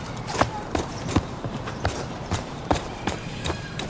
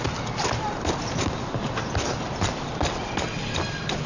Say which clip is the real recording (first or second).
second